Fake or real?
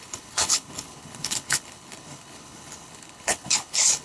fake